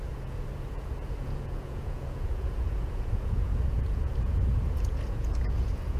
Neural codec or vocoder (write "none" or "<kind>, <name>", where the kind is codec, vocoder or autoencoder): vocoder, Vocos